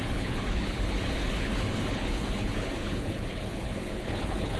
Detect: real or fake fake